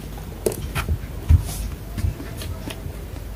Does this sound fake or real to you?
real